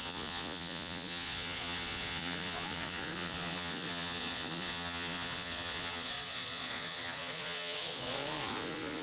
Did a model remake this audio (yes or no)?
yes